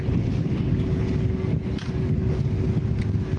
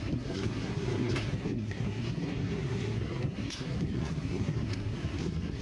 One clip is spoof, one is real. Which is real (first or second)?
first